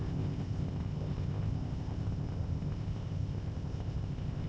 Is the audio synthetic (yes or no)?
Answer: yes